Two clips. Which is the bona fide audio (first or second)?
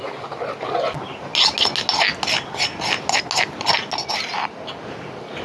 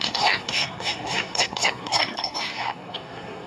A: first